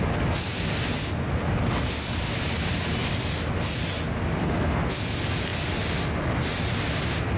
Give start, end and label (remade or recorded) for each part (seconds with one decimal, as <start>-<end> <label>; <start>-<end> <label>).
0.0-4.4 recorded; 4.4-5.0 remade; 5.0-7.4 recorded